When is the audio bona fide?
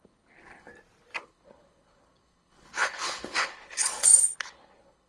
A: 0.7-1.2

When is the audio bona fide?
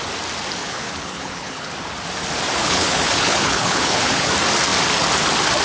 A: 0.0-0.6; 1.7-2.6; 4.3-5.6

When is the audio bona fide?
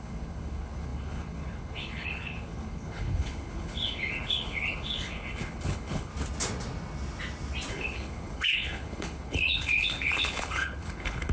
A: 6.1-7.7